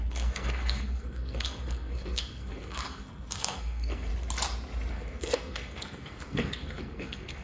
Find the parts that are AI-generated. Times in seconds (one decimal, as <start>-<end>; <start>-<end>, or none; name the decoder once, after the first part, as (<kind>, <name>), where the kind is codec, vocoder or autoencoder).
0.0-4.1 (codec, SNAC); 4.9-7.4